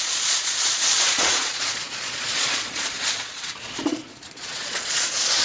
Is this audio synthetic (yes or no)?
yes